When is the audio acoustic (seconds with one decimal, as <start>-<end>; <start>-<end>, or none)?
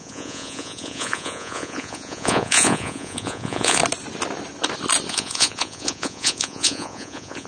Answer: 3.8-5.1